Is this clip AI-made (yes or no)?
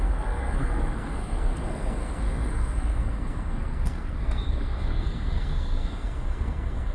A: yes